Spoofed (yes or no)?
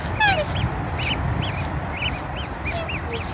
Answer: no